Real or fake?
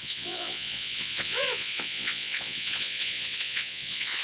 fake